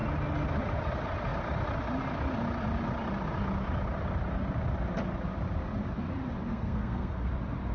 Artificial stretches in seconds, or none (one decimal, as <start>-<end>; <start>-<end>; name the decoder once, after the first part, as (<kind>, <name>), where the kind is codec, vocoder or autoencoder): 6.5-7.3 (codec, SNAC)